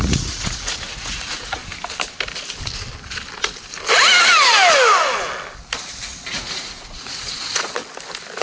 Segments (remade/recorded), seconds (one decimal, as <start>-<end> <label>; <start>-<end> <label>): 0.0-1.6 remade; 1.6-6.3 recorded; 6.3-7.8 remade; 7.8-8.4 recorded